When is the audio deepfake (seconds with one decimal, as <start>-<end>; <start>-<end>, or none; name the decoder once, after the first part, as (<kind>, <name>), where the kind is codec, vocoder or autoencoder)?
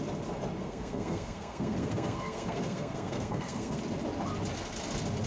0.6-3.8 (codec, SNAC)